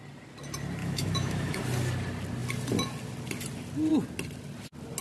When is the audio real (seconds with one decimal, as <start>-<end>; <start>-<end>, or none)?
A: 0.0-0.8; 1.6-5.0